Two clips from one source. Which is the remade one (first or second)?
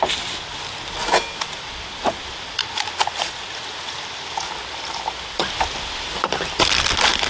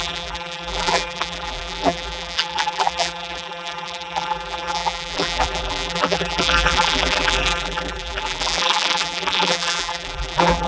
second